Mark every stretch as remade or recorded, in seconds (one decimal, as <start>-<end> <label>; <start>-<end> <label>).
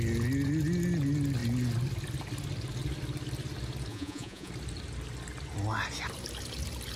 0.0-3.9 recorded; 3.9-4.5 remade; 4.5-7.0 recorded